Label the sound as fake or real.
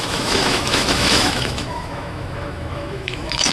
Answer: fake